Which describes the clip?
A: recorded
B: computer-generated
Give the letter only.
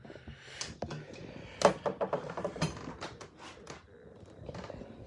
A